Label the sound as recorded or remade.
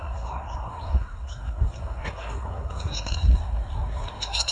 remade